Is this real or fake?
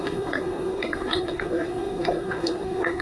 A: fake